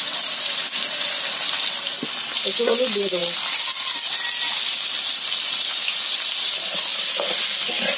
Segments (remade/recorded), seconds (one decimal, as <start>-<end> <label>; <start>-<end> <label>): 0.0-8.0 recorded